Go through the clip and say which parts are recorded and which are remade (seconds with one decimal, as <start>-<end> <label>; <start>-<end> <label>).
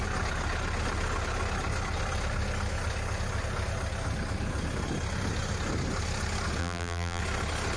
0.0-6.6 recorded; 6.6-7.2 remade; 7.2-7.8 recorded